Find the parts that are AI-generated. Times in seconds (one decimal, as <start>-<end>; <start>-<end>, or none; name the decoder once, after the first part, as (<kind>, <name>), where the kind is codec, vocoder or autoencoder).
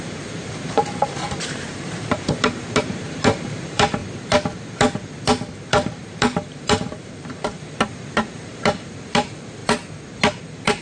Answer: 0.0-4.0 (vocoder, BigVGAN v2); 5.6-9.6; 10.4-10.8